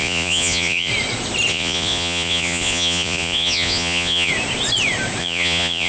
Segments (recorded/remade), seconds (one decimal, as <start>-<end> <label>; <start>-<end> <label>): 0.0-0.9 remade; 0.9-1.5 recorded; 1.5-4.3 remade; 4.3-5.2 recorded; 5.2-5.9 remade